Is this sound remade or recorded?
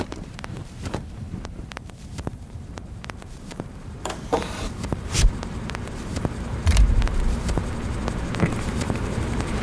remade